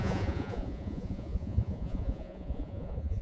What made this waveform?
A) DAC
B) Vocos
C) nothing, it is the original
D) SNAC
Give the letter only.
B